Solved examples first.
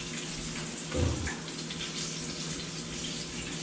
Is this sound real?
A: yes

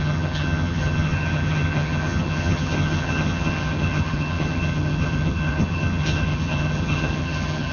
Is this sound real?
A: no